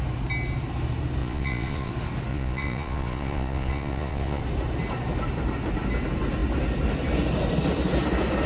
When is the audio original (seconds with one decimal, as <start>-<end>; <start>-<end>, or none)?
0.0-1.2; 1.9-2.3; 4.4-8.5